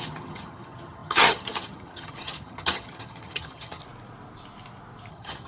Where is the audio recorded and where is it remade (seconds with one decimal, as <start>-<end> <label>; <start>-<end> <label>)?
0.0-3.8 remade; 3.8-5.1 recorded; 5.1-5.5 remade

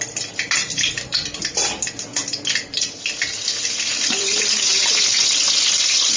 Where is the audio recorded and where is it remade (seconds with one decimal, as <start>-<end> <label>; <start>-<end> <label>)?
0.0-6.2 recorded

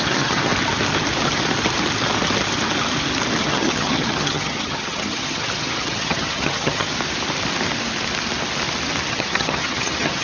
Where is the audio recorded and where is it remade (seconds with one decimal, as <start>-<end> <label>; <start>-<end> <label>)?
0.0-0.5 remade; 0.5-3.4 recorded; 3.4-6.9 remade; 6.9-9.1 recorded; 9.1-10.2 remade